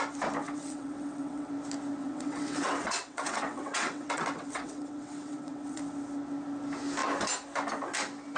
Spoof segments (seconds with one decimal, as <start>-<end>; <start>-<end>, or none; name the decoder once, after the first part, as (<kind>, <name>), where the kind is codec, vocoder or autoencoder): 0.4-1.5 (vocoder, WaveNeXt); 2.0-5.8